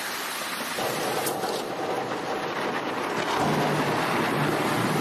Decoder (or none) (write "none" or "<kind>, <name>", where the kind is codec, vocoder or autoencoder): none